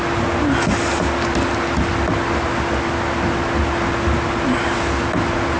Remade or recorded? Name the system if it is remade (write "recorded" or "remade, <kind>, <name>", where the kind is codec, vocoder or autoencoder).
recorded